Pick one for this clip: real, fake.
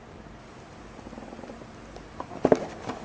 real